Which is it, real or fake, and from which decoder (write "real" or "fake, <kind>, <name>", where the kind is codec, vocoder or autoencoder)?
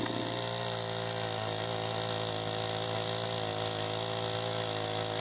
real